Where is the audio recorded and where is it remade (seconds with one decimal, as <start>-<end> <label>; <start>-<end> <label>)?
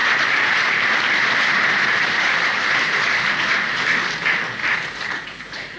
0.0-3.5 remade; 3.5-4.6 recorded; 4.6-5.8 remade